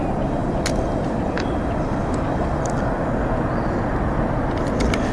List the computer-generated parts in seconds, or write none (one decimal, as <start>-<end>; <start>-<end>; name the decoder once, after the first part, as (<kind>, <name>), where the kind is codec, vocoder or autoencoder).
none